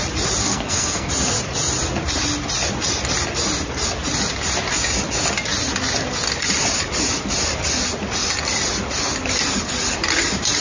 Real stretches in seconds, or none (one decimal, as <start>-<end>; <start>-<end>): 0.0-0.4; 1.1-10.6